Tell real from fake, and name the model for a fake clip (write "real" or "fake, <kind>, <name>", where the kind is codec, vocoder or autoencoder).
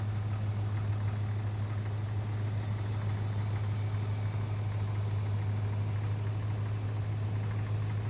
real